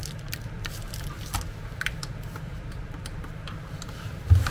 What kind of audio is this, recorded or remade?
remade